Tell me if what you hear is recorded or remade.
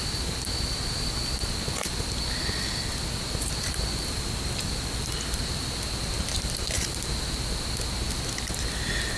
recorded